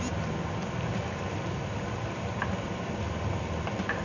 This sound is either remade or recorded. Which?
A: recorded